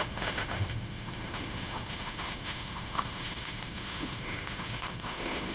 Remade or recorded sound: remade